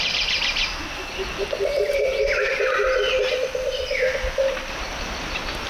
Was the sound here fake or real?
real